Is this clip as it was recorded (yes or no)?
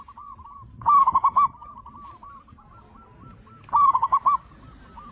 yes